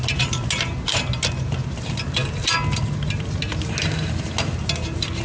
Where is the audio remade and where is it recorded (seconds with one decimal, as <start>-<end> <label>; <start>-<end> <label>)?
0.0-5.2 recorded